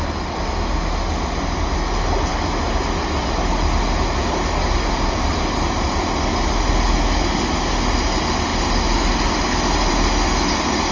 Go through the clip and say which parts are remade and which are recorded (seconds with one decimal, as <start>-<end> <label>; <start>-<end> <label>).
0.0-10.9 recorded